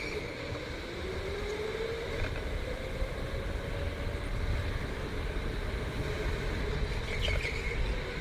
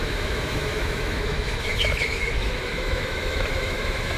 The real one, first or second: first